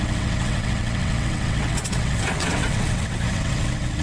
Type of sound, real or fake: fake